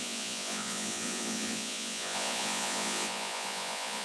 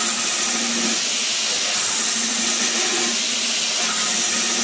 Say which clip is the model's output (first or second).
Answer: first